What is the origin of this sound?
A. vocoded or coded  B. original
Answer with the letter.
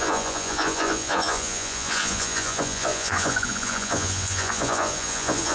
A